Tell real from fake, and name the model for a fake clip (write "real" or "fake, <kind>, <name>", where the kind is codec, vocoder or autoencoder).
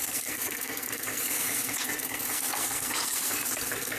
fake, codec, SNAC